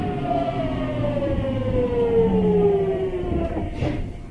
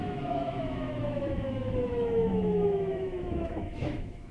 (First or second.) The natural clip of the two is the first